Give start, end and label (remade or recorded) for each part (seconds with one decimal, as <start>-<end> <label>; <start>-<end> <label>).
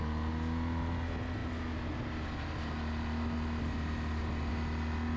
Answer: 0.0-5.2 recorded